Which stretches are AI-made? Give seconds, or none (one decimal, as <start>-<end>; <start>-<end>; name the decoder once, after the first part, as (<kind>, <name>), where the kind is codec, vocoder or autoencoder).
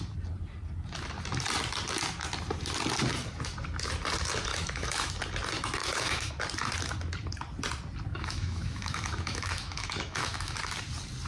4.5-5.1 (autoencoder, DAC-VAE); 5.8-6.3; 8.1-10.6